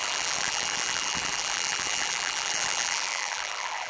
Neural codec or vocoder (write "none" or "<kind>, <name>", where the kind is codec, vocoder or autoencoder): vocoder, BigVGAN v2